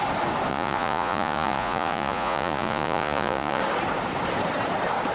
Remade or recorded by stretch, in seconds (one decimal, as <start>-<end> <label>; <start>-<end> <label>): 0.0-0.5 recorded; 0.5-3.6 remade; 3.6-5.1 recorded